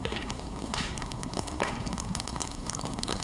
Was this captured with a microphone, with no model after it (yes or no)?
no